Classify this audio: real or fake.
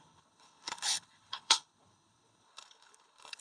fake